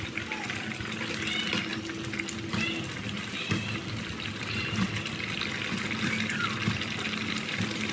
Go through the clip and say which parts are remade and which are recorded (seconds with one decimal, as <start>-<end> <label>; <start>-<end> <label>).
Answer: 0.0-7.9 recorded